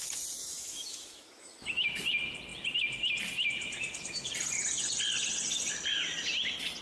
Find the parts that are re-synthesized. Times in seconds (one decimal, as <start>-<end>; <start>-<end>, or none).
0.4-2.0